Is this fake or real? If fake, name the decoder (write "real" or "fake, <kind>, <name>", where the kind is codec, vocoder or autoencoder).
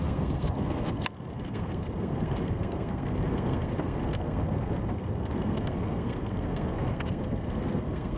fake, codec, SNAC